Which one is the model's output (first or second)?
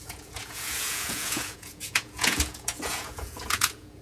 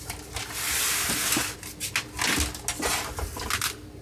first